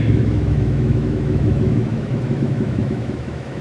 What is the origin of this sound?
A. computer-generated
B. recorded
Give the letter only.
A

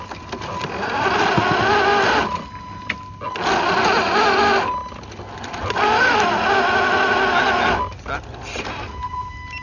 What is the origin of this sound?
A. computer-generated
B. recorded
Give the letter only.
B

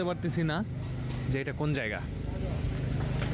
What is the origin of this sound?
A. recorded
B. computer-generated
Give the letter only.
A